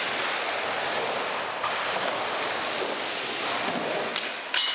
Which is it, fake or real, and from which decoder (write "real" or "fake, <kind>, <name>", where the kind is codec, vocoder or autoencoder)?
real